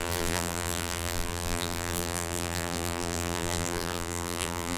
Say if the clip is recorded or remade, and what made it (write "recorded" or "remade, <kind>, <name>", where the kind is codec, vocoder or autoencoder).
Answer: remade, vocoder, BigVGAN v2